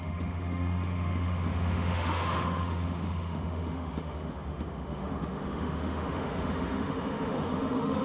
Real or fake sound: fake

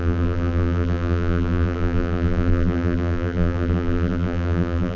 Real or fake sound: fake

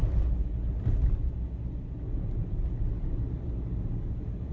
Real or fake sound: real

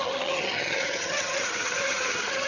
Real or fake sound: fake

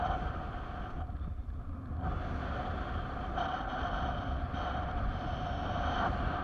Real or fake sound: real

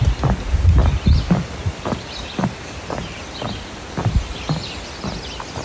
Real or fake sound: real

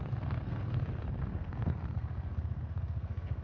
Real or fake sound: fake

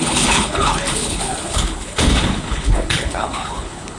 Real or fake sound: fake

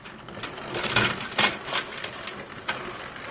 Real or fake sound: real